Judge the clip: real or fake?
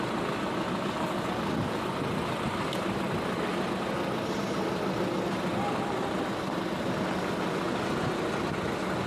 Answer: real